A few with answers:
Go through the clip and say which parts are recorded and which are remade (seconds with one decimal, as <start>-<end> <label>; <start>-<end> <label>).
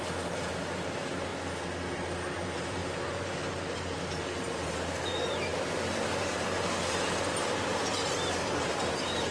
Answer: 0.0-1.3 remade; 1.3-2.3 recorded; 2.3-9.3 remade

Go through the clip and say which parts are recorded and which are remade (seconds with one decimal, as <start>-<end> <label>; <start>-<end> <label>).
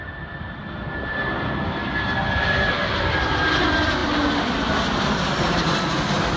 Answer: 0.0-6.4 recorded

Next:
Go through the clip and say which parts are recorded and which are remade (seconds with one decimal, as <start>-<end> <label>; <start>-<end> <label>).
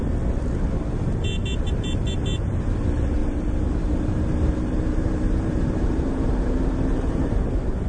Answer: 0.0-3.2 recorded; 3.2-7.4 remade; 7.4-7.9 recorded